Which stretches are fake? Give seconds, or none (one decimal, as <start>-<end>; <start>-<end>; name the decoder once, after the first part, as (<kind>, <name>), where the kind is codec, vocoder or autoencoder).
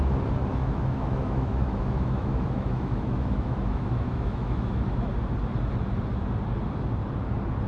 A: 0.5-5.1 (autoencoder, DAC-VAE)